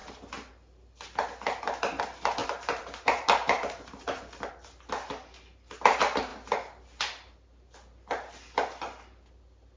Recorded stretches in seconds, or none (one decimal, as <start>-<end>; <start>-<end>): 0.0-2.4; 4.5-9.8